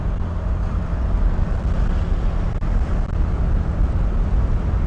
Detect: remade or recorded recorded